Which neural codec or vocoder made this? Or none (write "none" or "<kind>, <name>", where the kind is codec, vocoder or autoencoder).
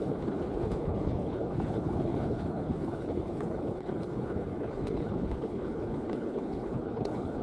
codec, HILCodec